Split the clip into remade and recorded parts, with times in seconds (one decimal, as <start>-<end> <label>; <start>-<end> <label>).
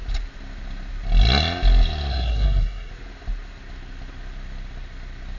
0.0-2.1 recorded; 2.1-2.9 remade; 2.9-5.4 recorded